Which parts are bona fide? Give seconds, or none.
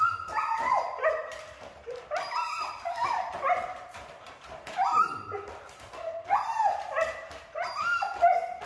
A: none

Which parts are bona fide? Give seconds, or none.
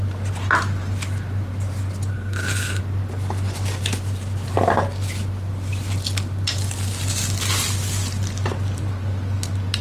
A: 0.0-2.1; 2.8-9.8